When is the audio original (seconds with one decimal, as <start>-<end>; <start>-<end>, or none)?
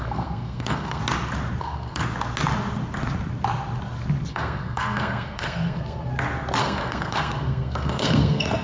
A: 1.0-1.6; 2.0-4.3; 6.1-6.6